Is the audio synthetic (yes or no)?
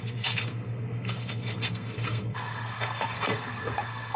yes